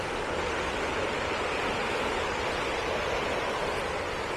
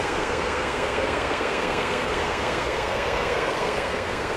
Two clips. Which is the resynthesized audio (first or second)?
second